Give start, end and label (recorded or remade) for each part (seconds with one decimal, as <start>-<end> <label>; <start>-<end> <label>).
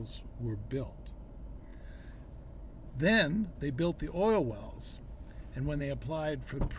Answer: 0.0-6.8 recorded